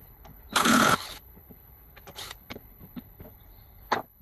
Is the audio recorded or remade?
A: remade